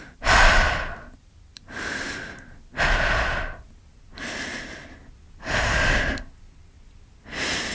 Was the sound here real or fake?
real